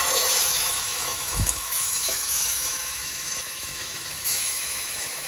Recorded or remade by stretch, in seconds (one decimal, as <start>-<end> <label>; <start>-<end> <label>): 0.0-5.3 remade